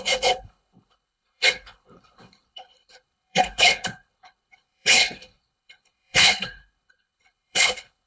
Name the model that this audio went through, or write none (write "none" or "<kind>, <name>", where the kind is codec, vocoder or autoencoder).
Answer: codec, HILCodec